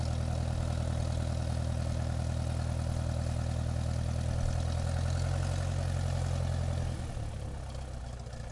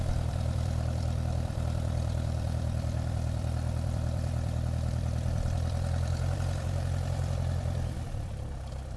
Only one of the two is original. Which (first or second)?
first